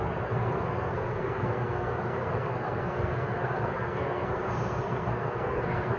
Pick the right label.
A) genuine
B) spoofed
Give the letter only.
B